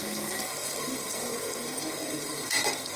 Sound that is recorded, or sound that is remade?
remade